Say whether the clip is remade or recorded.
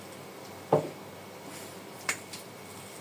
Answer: recorded